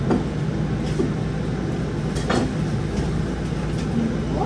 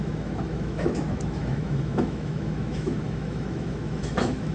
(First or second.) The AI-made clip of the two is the second